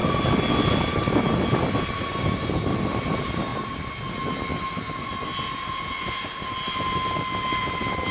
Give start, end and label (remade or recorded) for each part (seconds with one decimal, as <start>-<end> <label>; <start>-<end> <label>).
0.0-2.2 recorded; 2.2-5.1 remade; 5.1-7.6 recorded; 7.6-8.1 remade